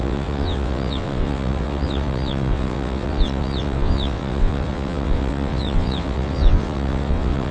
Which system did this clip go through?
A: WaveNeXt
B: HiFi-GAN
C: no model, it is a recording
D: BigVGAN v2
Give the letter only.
A